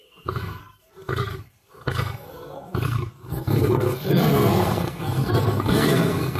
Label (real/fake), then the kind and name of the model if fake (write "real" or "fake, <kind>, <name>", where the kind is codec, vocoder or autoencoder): fake, codec, SNAC